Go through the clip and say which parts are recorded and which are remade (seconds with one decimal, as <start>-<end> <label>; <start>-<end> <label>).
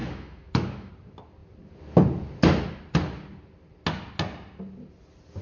0.0-0.9 remade; 0.9-5.4 recorded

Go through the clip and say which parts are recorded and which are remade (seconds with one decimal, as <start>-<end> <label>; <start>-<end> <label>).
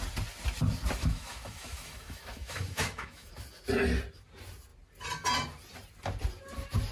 0.0-1.0 recorded; 1.0-3.3 remade; 3.3-6.9 recorded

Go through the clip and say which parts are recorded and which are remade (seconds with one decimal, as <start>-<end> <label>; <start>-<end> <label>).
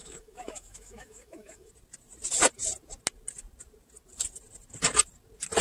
0.0-1.7 remade; 1.7-5.6 recorded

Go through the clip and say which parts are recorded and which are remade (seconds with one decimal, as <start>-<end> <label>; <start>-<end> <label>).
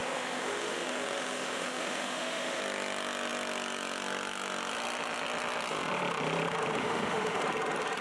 0.0-2.6 remade; 2.6-6.8 recorded; 6.8-7.4 remade; 7.4-8.0 recorded